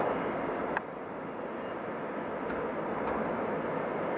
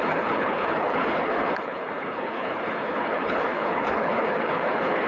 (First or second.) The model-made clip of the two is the second